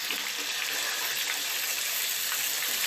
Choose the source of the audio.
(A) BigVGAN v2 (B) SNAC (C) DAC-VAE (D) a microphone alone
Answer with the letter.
D